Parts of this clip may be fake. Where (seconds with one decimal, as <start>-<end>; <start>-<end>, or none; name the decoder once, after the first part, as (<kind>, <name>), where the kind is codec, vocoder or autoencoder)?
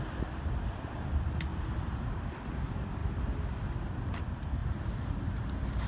1.5-2.2 (vocoder, BigVGAN v2); 4.6-5.1